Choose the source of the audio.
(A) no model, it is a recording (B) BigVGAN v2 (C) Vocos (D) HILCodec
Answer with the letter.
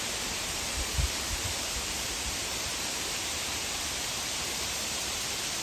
B